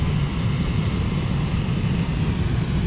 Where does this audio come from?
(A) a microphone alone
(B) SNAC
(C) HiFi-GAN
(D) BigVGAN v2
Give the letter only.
A